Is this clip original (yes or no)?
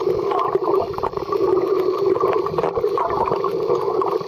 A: yes